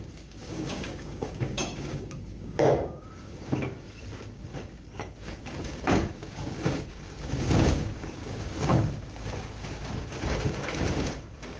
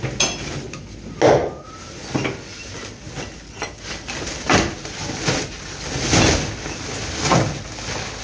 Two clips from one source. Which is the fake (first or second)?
first